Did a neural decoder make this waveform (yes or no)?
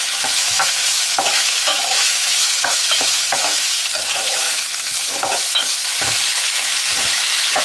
yes